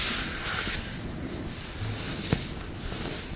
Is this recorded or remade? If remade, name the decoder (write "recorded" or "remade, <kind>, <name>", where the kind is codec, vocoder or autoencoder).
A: recorded